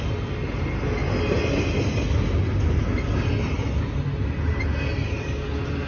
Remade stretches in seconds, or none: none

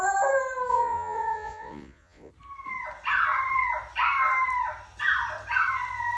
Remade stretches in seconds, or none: 0.7-2.3 (vocoder, Vocos)